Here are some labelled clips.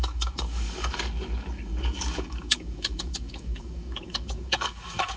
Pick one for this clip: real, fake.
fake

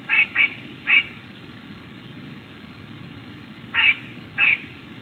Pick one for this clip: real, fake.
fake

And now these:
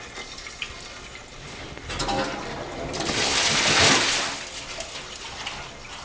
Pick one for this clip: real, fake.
real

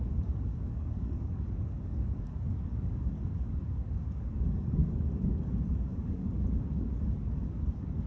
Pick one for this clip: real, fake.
fake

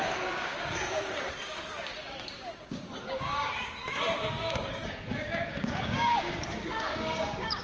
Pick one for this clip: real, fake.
fake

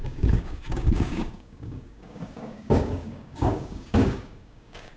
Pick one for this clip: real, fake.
fake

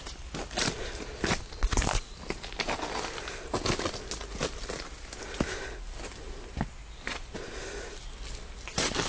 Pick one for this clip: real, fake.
real